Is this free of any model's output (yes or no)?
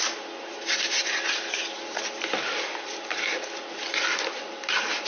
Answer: yes